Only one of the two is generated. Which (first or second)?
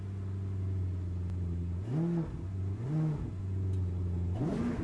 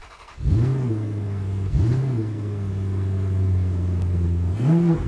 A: second